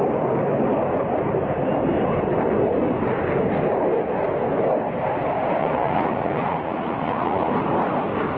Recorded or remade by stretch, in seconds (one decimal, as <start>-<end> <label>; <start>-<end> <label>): 0.0-5.6 recorded; 5.6-7.5 remade; 7.5-8.4 recorded